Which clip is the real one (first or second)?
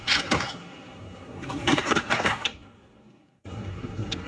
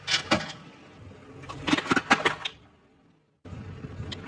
second